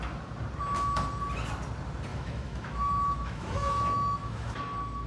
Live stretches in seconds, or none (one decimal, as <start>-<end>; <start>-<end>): 0.0-2.1; 4.6-5.1